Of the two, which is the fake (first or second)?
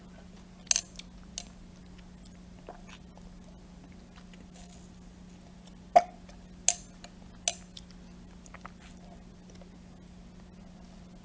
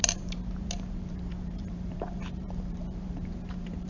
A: second